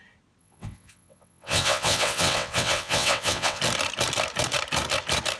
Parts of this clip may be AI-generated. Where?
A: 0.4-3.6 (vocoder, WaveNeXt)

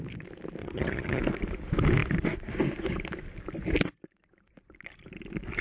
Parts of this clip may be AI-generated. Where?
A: 0.6-1.2 (vocoder, HiFi-GAN)

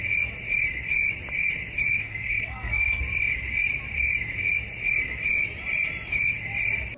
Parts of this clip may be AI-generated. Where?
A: 2.0-3.0 (codec, SNAC)

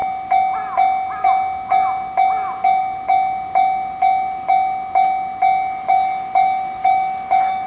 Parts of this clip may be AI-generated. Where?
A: 6.8-7.7 (autoencoder, DAC-VAE)

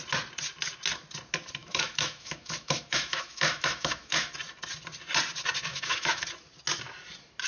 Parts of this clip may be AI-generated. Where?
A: 1.6-4.3 (autoencoder, DAC-VAE); 5.7-6.2

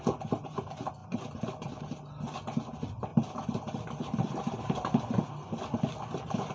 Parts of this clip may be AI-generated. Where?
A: 1.0-1.8 (vocoder, BigVGAN v2); 3.1-6.5

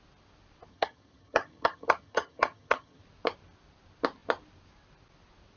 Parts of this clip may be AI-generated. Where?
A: 0.7-3.0 (vocoder, HiFi-GAN)